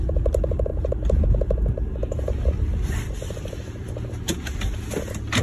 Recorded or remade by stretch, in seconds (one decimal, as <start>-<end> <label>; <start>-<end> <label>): 0.0-5.4 recorded